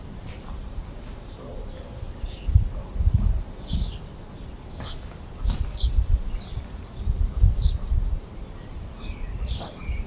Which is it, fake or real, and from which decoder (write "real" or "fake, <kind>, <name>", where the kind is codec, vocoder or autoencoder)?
real